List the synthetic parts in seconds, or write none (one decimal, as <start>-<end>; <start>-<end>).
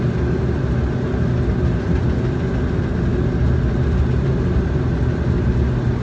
none